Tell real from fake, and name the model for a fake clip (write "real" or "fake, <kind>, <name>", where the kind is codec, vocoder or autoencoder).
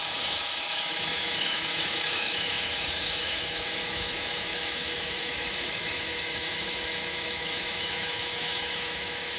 fake, autoencoder, DAC-VAE